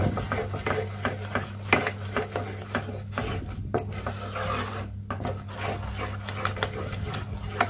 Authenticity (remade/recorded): recorded